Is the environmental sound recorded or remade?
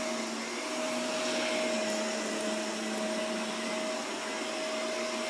recorded